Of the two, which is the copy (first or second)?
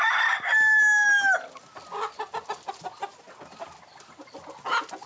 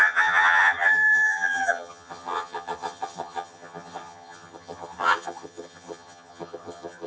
second